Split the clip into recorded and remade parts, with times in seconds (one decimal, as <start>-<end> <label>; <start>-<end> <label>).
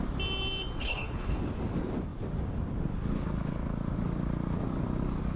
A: 0.0-0.8 recorded; 0.8-1.4 remade; 1.4-5.4 recorded